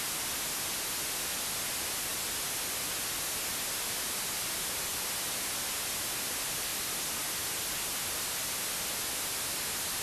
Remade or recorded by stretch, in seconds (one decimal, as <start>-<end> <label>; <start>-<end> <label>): 0.0-10.0 recorded

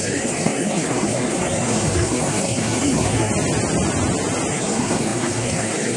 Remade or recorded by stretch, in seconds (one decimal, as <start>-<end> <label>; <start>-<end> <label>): 0.0-3.3 remade; 3.3-4.5 recorded; 4.5-6.0 remade

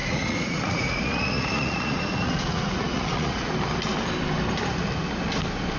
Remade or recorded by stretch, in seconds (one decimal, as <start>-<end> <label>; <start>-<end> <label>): 0.0-3.5 remade; 3.5-5.8 recorded

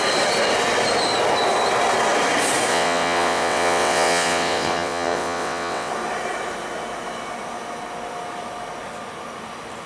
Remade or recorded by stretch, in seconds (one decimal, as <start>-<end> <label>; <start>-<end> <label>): 0.0-2.7 recorded; 2.7-5.9 remade; 5.9-9.9 recorded

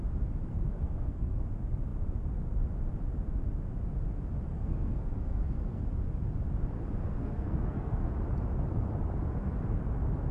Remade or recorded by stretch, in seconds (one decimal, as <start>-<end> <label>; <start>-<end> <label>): 0.0-0.5 recorded; 0.5-1.4 remade; 1.4-4.5 recorded; 4.5-5.8 remade; 5.8-7.1 recorded; 7.1-8.1 remade; 8.1-10.3 recorded